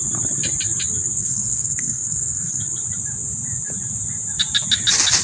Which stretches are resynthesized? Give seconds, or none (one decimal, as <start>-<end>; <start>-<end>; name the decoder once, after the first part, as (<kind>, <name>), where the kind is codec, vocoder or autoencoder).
1.2-2.6 (codec, SNAC)